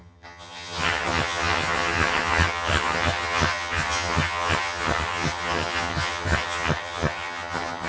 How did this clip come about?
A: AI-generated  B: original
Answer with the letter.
A